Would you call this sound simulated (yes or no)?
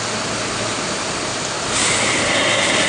no